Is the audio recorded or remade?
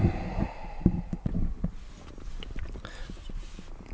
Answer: recorded